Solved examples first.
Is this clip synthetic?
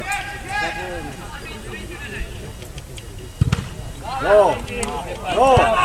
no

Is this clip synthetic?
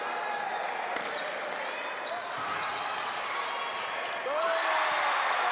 no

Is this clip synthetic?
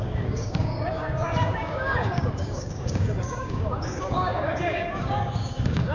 yes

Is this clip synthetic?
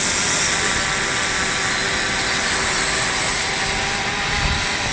no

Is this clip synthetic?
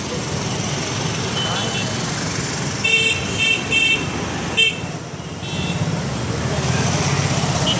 no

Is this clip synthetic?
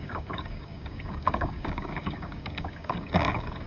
yes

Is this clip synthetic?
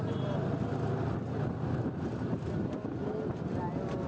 no